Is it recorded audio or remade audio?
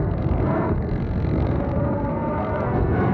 remade